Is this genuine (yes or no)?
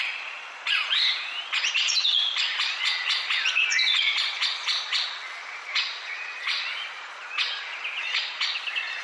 no